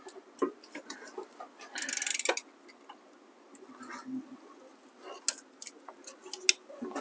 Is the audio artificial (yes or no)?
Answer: no